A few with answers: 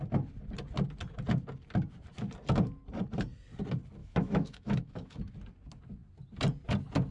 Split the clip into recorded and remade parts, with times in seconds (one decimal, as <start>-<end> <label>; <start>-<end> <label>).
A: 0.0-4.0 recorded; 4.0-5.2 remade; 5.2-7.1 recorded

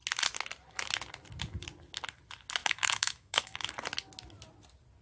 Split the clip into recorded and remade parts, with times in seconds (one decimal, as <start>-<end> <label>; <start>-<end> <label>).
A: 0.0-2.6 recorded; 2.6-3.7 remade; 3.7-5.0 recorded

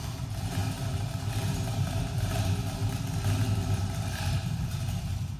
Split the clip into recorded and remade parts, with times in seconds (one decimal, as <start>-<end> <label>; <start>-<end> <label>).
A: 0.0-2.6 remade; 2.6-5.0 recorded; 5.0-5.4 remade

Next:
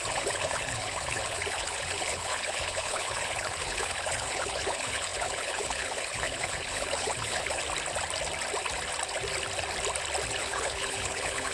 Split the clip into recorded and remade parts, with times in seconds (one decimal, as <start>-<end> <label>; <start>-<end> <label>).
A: 0.0-7.6 remade; 7.6-10.4 recorded; 10.4-11.5 remade

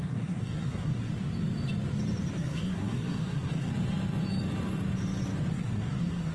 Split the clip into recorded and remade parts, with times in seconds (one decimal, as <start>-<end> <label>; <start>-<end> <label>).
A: 0.0-1.1 remade; 1.1-2.4 recorded; 2.4-3.7 remade; 3.7-5.5 recorded; 5.5-6.3 remade

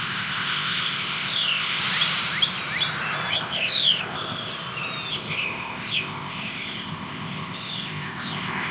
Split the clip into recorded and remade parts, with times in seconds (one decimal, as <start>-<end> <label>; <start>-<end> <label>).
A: 0.0-1.8 remade; 1.8-3.3 recorded; 3.3-4.5 remade; 4.5-5.1 recorded; 5.1-8.7 remade

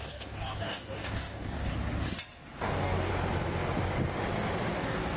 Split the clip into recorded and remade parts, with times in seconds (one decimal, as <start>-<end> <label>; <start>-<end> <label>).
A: 0.0-1.7 remade; 1.7-2.6 recorded; 2.6-3.1 remade; 3.1-4.7 recorded; 4.7-5.2 remade